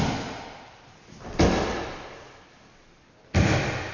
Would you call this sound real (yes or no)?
yes